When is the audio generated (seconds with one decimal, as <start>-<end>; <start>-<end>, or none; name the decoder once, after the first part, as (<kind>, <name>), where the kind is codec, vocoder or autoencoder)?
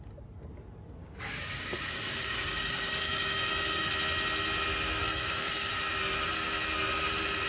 1.0-3.9 (codec, DAC); 5.0-5.7